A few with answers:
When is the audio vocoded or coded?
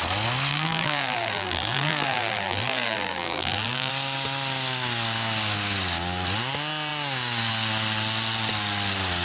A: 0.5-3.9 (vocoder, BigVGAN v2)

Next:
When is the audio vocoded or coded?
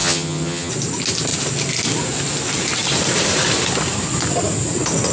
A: 0.0-0.7 (vocoder, HiFi-GAN)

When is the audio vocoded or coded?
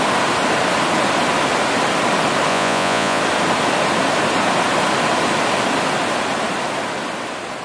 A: 2.5-3.2 (vocoder, Vocos)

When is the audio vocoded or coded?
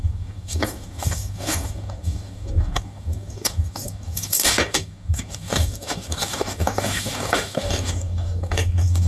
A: 0.0-9.1 (codec, DAC)